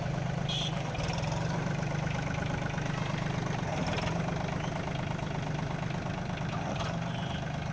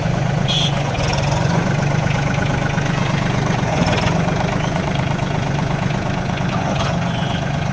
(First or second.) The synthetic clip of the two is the second